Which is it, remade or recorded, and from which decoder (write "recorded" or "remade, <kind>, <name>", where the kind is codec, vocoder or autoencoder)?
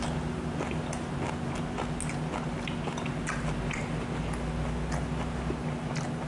recorded